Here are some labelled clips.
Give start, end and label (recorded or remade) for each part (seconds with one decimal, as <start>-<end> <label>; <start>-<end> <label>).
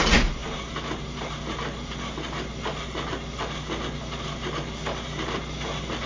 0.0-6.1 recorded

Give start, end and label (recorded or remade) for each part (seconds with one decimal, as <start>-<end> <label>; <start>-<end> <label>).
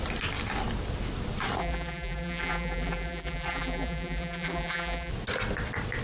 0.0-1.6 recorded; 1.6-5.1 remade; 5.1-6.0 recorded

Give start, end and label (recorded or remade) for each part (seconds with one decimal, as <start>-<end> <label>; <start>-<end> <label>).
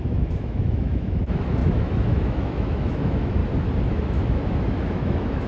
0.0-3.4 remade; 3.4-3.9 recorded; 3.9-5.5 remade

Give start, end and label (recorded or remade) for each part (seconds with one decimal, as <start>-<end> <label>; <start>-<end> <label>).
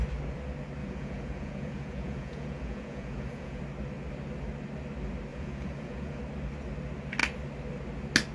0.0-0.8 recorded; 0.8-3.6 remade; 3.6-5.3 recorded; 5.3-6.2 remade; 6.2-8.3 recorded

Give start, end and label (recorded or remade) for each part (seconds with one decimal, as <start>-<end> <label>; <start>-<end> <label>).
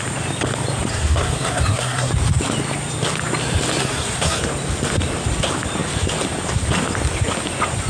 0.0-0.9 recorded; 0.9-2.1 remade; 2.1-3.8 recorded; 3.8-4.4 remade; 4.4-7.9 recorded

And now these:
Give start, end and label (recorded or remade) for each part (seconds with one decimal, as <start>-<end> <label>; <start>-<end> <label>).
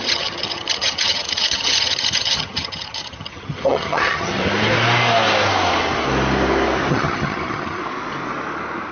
0.0-4.4 remade; 4.4-6.9 recorded; 6.9-7.8 remade; 7.8-8.9 recorded